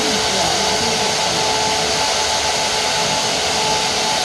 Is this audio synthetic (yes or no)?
no